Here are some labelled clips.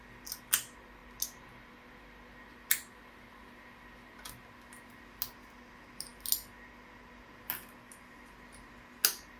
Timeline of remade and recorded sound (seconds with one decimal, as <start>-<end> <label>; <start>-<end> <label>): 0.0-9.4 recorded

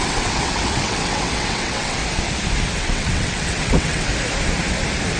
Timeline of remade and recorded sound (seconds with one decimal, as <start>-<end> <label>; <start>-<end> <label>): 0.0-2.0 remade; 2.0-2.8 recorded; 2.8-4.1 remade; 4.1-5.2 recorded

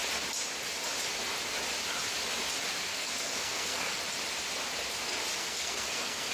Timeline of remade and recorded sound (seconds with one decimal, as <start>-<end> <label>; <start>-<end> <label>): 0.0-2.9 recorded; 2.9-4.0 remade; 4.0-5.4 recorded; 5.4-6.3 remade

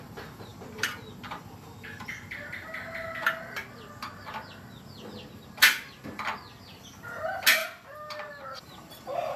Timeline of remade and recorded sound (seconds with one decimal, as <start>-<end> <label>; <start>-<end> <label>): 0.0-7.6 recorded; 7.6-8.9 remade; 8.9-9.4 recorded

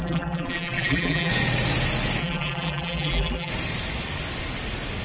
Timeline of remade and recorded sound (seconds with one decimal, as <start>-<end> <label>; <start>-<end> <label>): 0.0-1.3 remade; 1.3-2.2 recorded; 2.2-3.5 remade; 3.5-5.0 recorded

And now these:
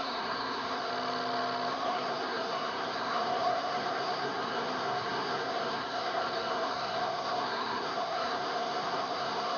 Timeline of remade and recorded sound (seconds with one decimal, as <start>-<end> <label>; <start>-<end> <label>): 0.0-0.9 remade; 0.9-1.7 recorded; 1.7-9.6 remade

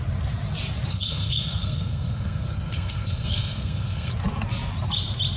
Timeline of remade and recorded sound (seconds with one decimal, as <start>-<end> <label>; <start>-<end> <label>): 0.0-0.9 recorded; 0.9-4.1 remade; 4.1-5.4 recorded

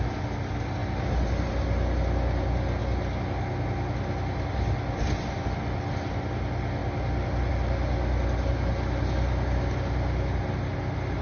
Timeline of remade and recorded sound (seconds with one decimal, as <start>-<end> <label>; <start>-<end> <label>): 0.0-11.2 recorded